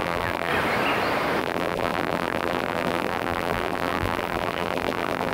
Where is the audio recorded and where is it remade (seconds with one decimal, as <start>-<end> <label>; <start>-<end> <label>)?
0.0-0.5 remade; 0.5-1.4 recorded; 1.4-5.3 remade